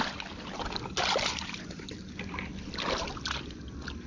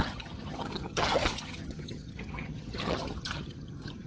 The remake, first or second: second